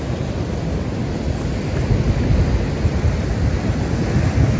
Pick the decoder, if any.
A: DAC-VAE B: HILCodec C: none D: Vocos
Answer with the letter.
C